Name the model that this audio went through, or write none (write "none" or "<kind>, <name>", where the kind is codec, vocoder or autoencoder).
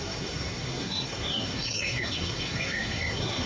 codec, SNAC